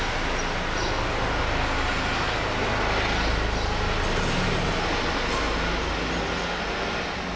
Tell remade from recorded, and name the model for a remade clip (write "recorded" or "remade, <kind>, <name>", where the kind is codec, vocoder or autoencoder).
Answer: recorded